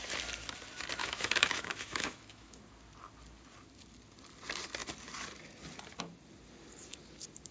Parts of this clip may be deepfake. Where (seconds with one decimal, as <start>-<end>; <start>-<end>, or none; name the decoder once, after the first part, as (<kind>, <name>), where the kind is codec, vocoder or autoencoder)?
1.0-2.6 (autoencoder, DAC-VAE)

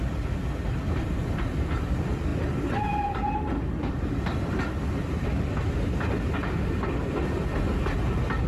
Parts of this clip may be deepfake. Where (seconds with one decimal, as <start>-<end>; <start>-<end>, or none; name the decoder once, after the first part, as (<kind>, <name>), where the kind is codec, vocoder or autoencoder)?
none